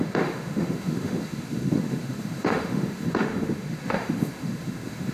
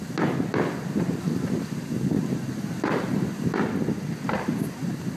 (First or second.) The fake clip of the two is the first